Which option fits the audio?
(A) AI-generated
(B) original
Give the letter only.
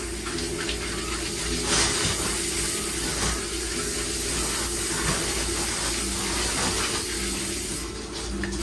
B